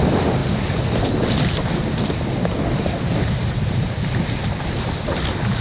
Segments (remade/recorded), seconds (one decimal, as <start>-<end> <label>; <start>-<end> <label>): 0.0-5.6 recorded